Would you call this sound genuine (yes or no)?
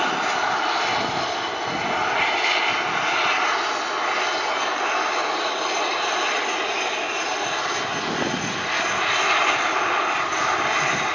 yes